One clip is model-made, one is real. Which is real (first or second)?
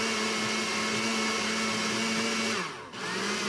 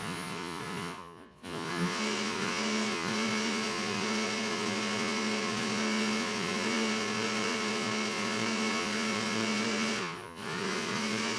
first